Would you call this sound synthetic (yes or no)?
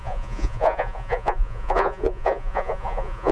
yes